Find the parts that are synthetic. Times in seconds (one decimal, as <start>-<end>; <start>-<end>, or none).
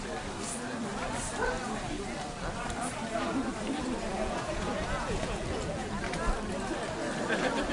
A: 4.1-5.9